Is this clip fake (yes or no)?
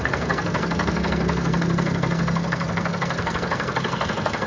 yes